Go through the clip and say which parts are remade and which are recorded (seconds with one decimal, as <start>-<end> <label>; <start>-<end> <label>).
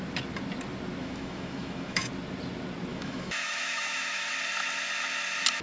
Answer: 0.0-1.0 recorded; 1.0-2.0 remade; 2.0-2.9 recorded; 2.9-4.3 remade; 4.3-5.6 recorded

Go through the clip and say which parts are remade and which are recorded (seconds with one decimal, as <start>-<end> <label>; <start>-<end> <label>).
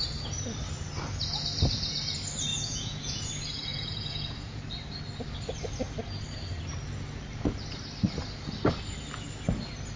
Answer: 0.0-2.5 recorded; 2.5-3.3 remade; 3.3-3.7 recorded; 3.7-4.6 remade; 4.6-10.0 recorded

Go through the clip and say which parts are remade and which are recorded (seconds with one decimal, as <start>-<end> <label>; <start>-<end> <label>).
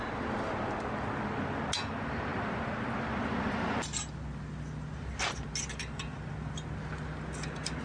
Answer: 0.0-7.8 recorded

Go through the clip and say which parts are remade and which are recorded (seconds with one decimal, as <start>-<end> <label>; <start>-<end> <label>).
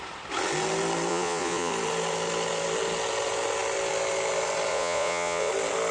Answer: 0.0-1.1 recorded; 1.1-1.7 remade; 1.7-4.7 recorded; 4.7-5.5 remade; 5.5-5.9 recorded